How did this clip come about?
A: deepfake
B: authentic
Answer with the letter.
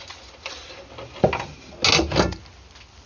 B